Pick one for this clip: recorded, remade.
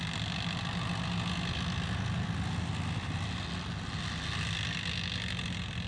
recorded